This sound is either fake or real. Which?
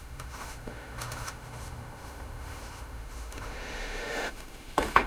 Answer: fake